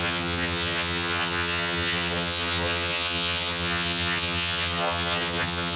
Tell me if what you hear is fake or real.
fake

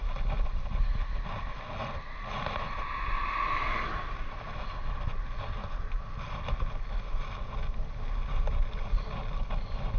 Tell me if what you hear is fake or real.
real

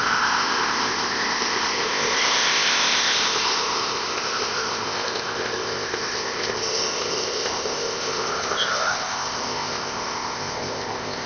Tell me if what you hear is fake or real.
fake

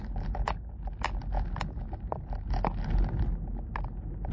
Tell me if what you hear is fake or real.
real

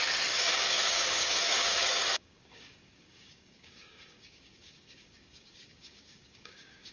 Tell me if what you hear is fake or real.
fake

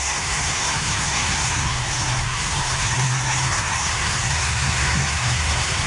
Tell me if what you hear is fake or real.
fake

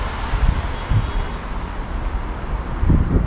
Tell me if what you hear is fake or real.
real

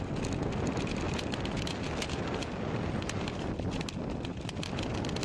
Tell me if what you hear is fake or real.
real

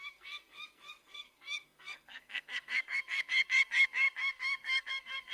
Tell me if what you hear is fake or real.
fake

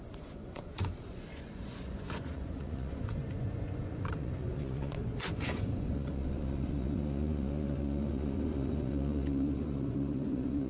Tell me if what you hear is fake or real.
fake